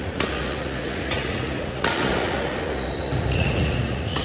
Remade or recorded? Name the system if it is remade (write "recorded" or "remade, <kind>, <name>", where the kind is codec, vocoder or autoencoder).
remade, vocoder, Vocos